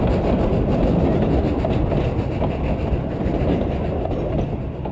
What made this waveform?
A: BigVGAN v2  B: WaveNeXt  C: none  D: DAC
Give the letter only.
C